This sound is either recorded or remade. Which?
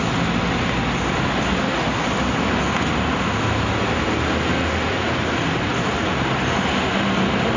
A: recorded